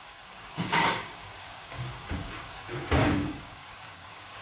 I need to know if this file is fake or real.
fake